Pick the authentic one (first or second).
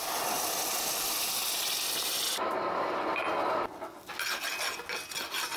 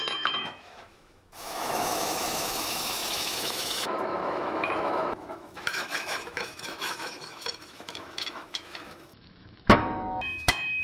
first